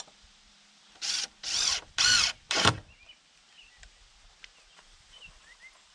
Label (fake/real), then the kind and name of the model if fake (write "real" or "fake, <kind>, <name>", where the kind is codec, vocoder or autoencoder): real